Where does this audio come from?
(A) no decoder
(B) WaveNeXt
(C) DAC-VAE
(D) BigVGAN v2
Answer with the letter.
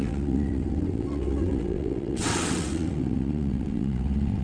B